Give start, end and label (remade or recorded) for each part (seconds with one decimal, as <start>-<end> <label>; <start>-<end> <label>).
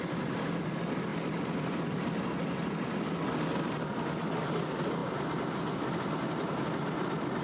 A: 0.0-7.4 recorded